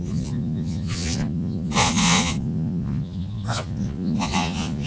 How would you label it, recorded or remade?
remade